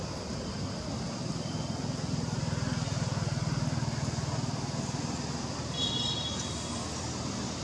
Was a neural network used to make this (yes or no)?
no